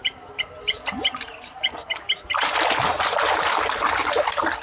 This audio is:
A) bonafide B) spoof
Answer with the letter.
A